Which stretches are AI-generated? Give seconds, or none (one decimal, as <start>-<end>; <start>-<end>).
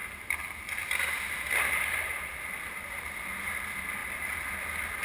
none